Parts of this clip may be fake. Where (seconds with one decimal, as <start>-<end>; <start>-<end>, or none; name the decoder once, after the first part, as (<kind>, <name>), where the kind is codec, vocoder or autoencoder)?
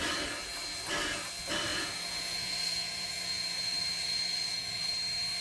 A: 1.7-4.9 (vocoder, Vocos)